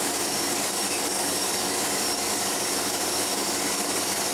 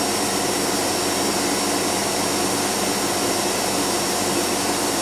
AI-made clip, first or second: first